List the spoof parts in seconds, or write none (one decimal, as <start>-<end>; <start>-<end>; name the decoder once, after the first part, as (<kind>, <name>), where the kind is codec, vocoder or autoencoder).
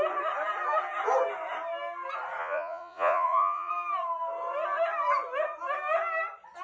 2.4-3.7 (vocoder, Vocos)